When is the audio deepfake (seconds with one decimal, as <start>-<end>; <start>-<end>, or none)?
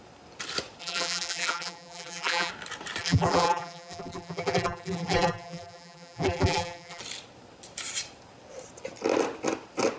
0.8-2.5; 3.0-7.0